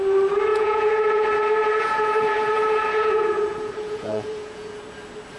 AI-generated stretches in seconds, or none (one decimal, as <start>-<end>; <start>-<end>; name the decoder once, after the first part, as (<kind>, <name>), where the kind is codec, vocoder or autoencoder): 0.5-1.2 (vocoder, Vocos); 1.6-4.8